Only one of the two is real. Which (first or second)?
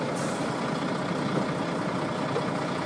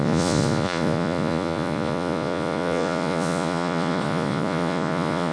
first